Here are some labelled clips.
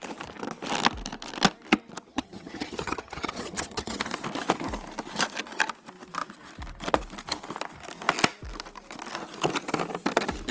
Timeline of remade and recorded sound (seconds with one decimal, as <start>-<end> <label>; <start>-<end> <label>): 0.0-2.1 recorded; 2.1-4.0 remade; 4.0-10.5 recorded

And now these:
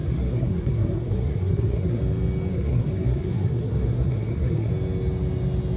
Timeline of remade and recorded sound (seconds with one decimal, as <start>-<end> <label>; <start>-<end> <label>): 0.0-2.0 remade; 2.0-2.5 recorded; 2.5-4.7 remade; 4.7-5.8 recorded

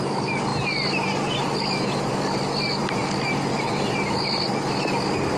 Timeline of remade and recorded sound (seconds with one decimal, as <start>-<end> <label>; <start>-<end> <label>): 0.0-5.4 recorded

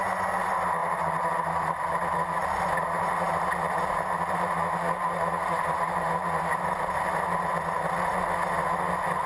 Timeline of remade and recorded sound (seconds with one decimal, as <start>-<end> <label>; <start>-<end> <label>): 0.0-9.3 recorded

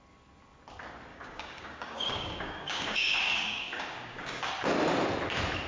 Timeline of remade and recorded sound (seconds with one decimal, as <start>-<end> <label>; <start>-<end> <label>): 0.0-1.1 recorded; 1.1-4.5 remade; 4.5-5.7 recorded

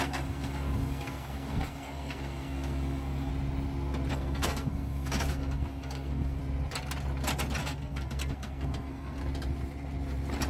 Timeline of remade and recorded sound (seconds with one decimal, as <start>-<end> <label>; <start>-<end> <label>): 0.0-3.3 remade; 3.3-4.1 recorded; 4.1-6.4 remade; 6.4-7.6 recorded; 7.6-9.2 remade; 9.2-10.5 recorded